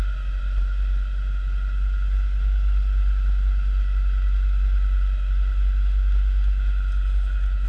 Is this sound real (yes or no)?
yes